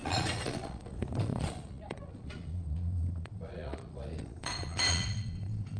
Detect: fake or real fake